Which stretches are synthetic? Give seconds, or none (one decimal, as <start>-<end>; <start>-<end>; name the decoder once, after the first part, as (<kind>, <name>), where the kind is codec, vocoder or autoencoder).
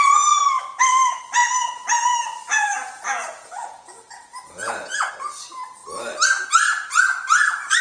1.4-5.1 (vocoder, Vocos)